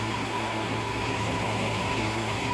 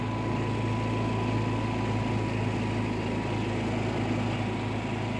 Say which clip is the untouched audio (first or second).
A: second